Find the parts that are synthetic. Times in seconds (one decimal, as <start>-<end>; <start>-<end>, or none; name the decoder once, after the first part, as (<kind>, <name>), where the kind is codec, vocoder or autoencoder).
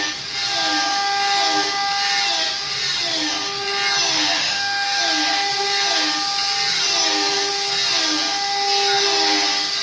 4.4-5.0 (autoencoder, DAC-VAE)